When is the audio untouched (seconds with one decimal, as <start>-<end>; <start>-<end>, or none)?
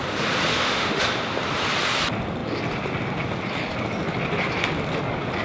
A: 0.0-0.5; 1.0-5.4